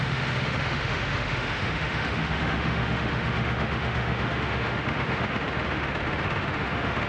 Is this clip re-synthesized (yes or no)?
yes